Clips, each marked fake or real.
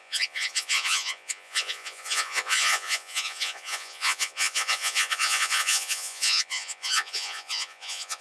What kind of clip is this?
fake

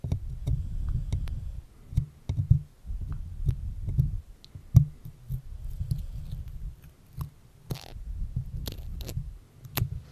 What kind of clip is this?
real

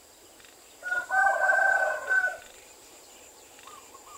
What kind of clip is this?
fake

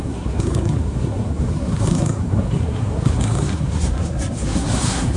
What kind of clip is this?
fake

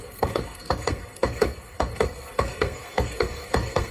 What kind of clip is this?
fake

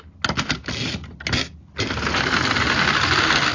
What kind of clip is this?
real